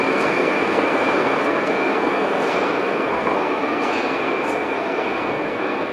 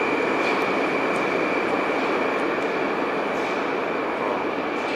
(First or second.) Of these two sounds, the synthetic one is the first